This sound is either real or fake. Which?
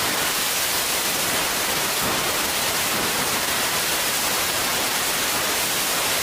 fake